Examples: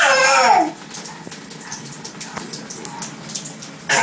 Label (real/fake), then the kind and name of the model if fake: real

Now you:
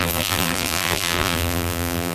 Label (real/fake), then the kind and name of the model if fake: fake, vocoder, BigVGAN v2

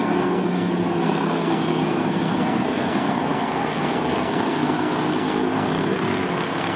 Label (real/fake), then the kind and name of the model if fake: fake, codec, SNAC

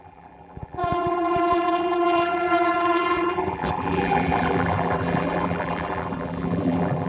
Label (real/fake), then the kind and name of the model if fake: fake, vocoder, BigVGAN v2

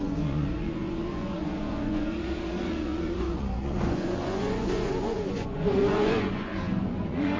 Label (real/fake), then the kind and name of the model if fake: fake, vocoder, Vocos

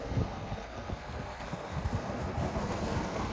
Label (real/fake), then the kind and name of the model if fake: fake, codec, SNAC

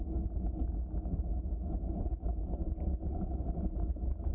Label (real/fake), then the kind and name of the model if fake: real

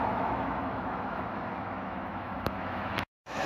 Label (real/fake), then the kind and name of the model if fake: fake, autoencoder, DAC-VAE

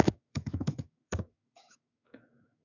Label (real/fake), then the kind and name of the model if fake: fake, autoencoder, DAC-VAE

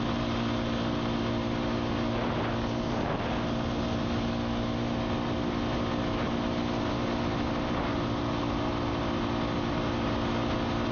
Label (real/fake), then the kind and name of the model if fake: real